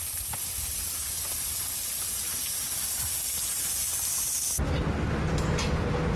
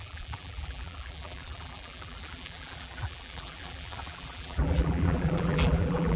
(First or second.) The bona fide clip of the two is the first